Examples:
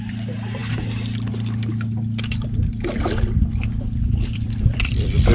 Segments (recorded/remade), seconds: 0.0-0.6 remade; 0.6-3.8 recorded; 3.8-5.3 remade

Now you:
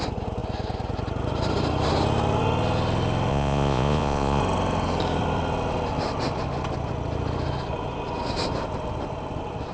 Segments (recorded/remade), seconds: 0.0-3.3 recorded; 3.3-4.4 remade; 4.4-9.7 recorded

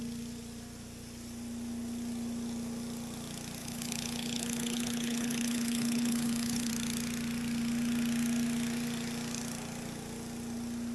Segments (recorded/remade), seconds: 0.0-3.6 recorded; 3.6-6.7 remade; 6.7-10.9 recorded

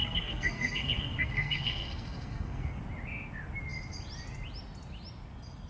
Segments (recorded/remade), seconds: 0.0-2.8 remade; 2.8-5.7 recorded

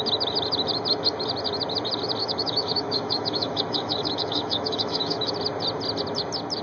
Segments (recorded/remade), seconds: 0.0-2.2 recorded; 2.2-5.3 remade; 5.3-6.6 recorded

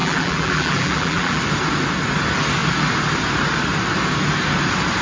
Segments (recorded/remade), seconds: 0.0-1.4 remade; 1.4-5.0 recorded

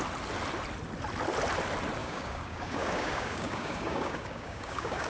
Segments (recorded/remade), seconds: 0.0-2.0 recorded; 2.0-5.1 remade

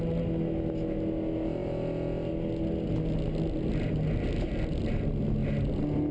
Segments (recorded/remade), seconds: 0.0-6.1 recorded